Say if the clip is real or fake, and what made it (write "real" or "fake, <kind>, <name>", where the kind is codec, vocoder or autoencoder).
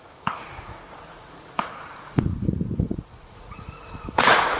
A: fake, vocoder, Vocos